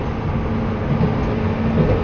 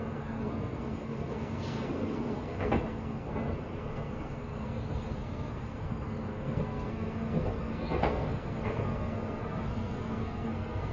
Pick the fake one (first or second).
second